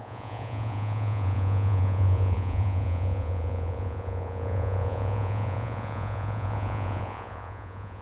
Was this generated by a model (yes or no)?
yes